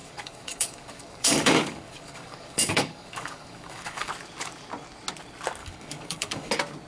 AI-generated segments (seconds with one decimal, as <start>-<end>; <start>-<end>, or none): 0.0-4.1; 5.6-6.5